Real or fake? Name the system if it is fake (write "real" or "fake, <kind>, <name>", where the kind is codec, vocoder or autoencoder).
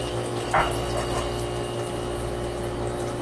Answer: real